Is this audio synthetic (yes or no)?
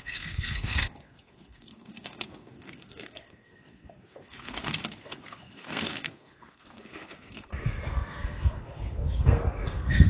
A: yes